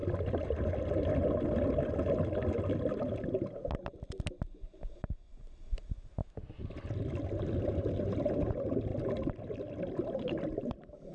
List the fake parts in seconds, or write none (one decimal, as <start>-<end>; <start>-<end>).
5.3-6.2; 7.6-8.9; 9.8-11.1